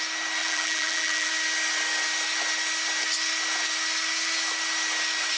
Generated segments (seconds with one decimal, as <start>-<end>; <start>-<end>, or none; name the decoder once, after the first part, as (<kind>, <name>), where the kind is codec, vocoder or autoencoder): 0.4-1.3 (vocoder, BigVGAN v2)